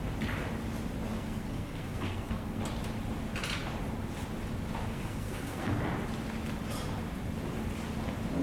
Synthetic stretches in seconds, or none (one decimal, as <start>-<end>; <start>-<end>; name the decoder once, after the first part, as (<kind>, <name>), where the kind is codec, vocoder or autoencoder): 1.1-2.6 (codec, SNAC); 4.8-5.8